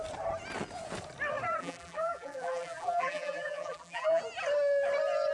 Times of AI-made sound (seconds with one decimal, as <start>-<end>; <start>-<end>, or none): 1.6-4.2